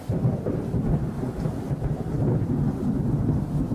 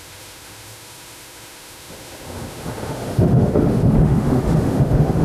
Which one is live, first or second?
first